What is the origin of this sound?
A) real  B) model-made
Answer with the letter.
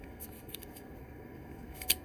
B